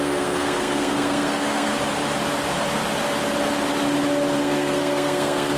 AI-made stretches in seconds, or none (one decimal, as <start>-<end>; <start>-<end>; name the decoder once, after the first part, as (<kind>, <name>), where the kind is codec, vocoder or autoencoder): 0.0-1.7 (codec, SNAC); 4.4-5.6